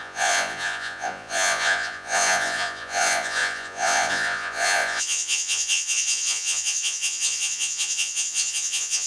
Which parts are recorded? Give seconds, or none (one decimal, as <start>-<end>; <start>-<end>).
none